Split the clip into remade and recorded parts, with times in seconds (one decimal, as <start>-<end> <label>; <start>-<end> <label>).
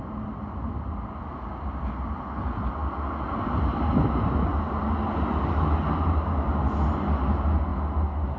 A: 0.0-8.4 recorded